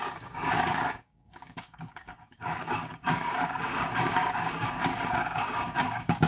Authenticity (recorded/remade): remade